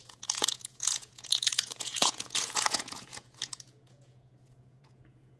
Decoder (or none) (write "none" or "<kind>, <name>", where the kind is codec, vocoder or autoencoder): vocoder, Vocos